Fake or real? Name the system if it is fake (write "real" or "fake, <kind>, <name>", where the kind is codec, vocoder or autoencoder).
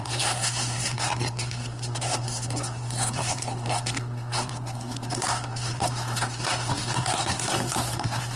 fake, codec, SNAC